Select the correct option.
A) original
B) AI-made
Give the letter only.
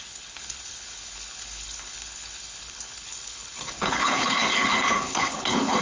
B